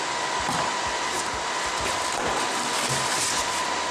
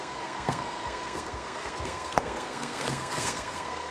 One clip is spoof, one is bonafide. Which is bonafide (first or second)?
first